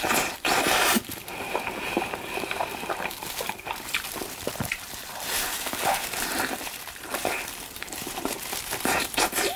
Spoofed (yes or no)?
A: yes